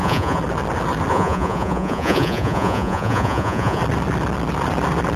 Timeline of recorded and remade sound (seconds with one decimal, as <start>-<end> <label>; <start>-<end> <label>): 0.0-0.4 remade; 0.4-1.1 recorded; 1.1-3.8 remade; 3.8-5.2 recorded